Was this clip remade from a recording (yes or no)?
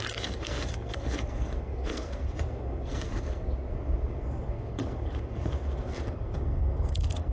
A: yes